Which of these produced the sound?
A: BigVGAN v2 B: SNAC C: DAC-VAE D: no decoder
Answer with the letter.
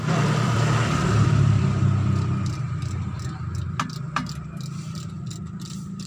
A